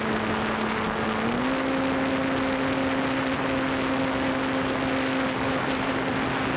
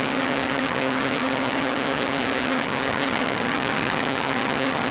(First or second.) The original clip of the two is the first